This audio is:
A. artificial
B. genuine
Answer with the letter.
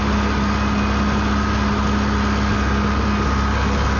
B